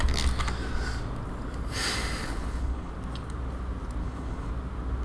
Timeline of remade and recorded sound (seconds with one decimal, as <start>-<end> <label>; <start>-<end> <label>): 0.0-2.2 recorded; 2.2-2.9 remade; 2.9-4.0 recorded; 4.0-4.5 remade; 4.5-5.0 recorded